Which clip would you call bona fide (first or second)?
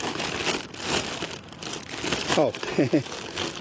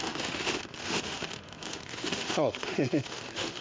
first